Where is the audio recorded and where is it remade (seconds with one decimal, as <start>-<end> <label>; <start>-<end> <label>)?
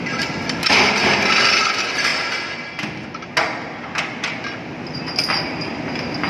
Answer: 0.0-6.3 recorded